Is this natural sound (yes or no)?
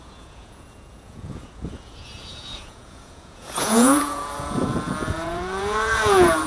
no